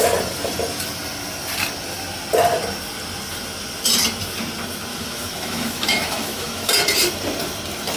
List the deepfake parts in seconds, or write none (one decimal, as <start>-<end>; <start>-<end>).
4.9-6.7